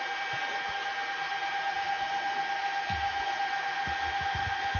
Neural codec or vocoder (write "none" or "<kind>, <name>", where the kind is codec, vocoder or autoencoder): none